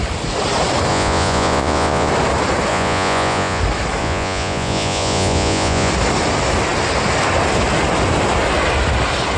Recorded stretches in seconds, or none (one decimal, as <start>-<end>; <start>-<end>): 0.0-0.9; 2.1-2.7; 3.6-4.0; 5.9-9.4